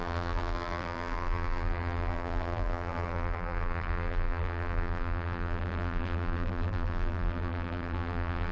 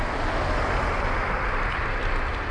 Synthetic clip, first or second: first